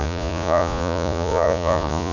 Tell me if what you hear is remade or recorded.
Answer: remade